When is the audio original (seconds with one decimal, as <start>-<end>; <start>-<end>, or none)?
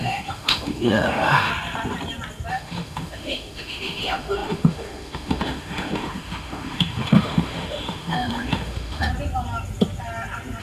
1.5-2.5; 9.1-10.6